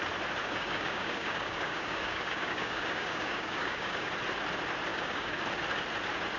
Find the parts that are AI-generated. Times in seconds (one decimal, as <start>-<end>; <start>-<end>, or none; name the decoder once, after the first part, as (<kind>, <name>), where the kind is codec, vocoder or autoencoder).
0.4-4.1 (codec, DAC); 4.9-5.4